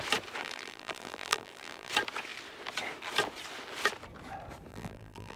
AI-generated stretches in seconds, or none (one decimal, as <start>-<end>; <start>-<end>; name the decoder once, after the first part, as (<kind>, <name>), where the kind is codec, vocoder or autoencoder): 0.4-1.9 (vocoder, BigVGAN v2); 4.7-5.4